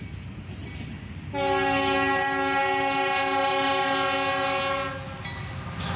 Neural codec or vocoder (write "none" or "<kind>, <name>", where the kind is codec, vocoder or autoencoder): none